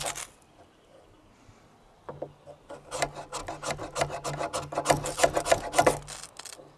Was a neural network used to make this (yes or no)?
no